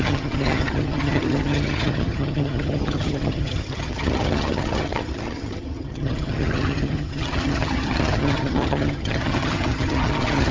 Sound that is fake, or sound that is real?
fake